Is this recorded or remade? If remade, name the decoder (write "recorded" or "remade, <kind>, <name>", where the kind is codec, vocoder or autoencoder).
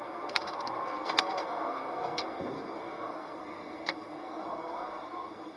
remade, codec, SNAC